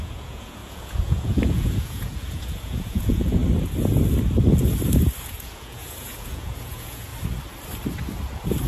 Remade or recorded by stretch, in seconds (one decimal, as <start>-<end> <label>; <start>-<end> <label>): 0.0-3.4 remade; 3.4-5.2 recorded; 5.2-7.1 remade; 7.1-8.7 recorded